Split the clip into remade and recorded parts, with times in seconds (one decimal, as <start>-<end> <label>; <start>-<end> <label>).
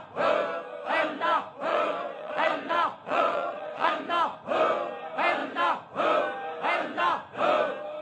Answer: 0.0-1.7 recorded; 1.7-3.9 remade; 3.9-8.0 recorded